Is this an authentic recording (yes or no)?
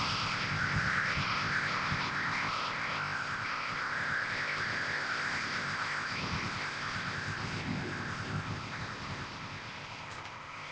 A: no